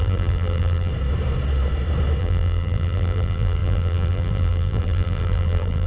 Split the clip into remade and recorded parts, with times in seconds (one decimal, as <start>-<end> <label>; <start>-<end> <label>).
0.0-0.9 remade; 0.9-2.2 recorded; 2.2-5.9 remade